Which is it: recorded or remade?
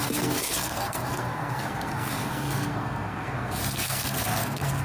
remade